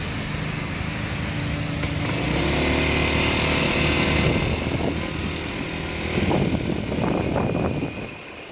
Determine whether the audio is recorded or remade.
recorded